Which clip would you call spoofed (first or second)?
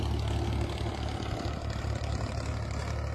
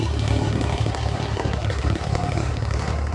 second